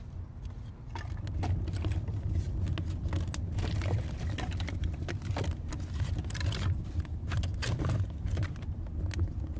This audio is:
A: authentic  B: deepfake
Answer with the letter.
A